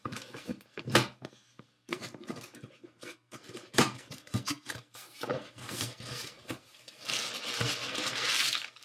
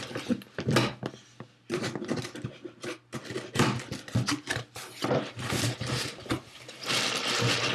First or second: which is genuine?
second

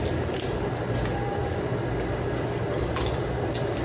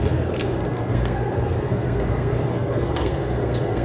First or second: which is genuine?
first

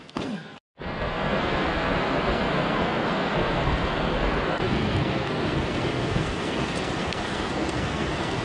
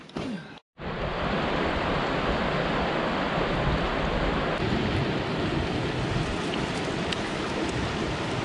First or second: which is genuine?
second